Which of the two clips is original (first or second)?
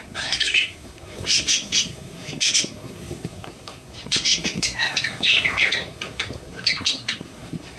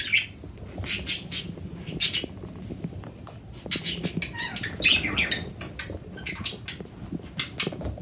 second